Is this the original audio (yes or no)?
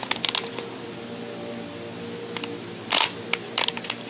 yes